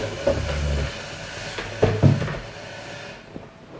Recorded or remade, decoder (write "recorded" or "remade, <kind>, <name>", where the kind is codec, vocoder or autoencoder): recorded